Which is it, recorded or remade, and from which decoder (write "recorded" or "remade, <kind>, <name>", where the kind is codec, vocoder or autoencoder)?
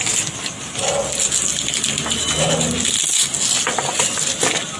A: recorded